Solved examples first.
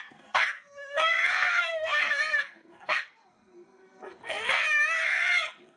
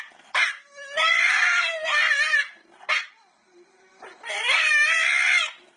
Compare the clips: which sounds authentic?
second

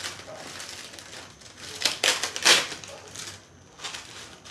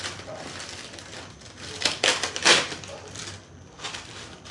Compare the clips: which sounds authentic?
first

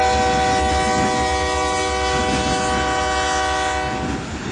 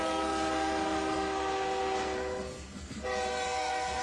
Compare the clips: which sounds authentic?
first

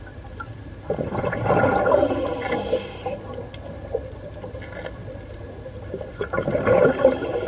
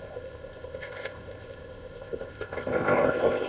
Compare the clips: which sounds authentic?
first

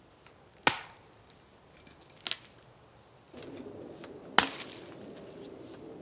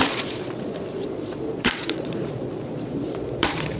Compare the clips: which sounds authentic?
first